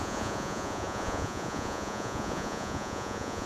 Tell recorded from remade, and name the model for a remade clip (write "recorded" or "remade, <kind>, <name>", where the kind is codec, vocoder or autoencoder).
remade, vocoder, Vocos